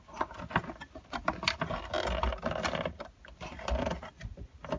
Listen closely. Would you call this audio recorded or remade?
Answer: recorded